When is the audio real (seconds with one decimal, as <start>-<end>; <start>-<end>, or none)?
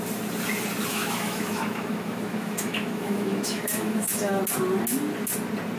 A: 0.0-0.9; 4.4-5.8